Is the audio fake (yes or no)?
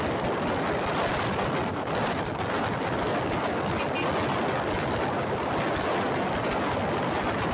no